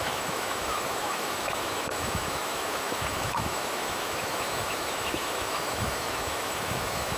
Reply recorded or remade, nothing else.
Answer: remade